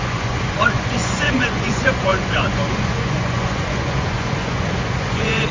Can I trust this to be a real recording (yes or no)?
no